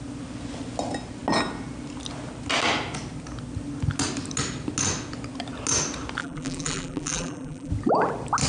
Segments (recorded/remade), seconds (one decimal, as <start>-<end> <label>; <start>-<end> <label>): 0.0-6.2 recorded; 6.2-7.7 remade; 7.7-8.5 recorded